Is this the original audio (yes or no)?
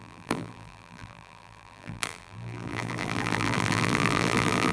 no